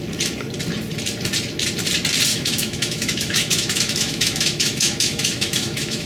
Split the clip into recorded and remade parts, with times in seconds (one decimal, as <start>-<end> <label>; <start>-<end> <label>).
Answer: 0.0-2.3 recorded; 2.3-6.1 remade